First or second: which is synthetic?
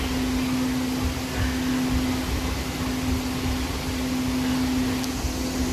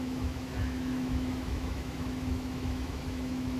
second